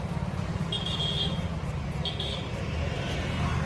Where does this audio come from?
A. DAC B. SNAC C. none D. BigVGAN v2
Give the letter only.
C